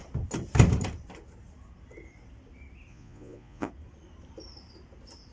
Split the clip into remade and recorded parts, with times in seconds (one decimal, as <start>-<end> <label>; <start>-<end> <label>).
0.0-2.9 recorded; 2.9-3.7 remade; 3.7-5.3 recorded